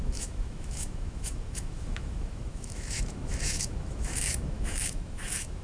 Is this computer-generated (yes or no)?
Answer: yes